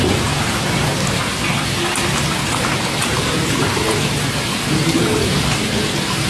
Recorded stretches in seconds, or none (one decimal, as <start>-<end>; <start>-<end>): 0.0-6.3